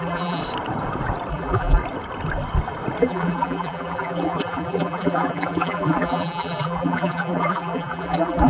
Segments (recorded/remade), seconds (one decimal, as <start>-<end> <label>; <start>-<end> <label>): 0.0-0.4 remade; 0.4-1.3 recorded; 1.3-1.8 remade; 1.8-3.0 recorded; 3.0-8.5 remade